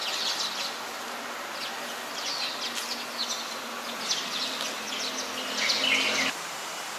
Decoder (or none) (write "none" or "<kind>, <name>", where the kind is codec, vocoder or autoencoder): none